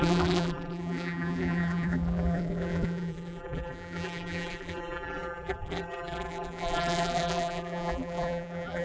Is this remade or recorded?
remade